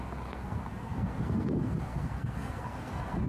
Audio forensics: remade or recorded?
remade